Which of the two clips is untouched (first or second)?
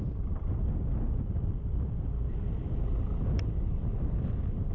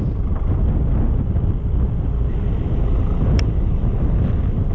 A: second